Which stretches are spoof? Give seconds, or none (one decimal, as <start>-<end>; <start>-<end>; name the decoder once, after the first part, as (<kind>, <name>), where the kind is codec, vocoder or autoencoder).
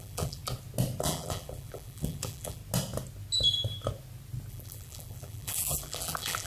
0.0-0.4 (vocoder, BigVGAN v2); 1.0-2.6; 4.5-6.5